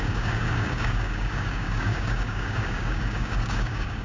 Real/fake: fake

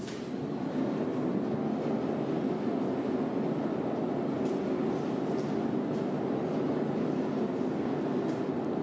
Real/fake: real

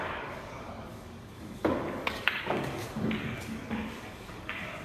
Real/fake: fake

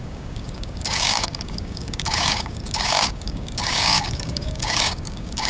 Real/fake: fake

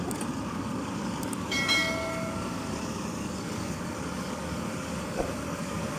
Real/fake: fake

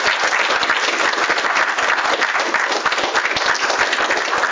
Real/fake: real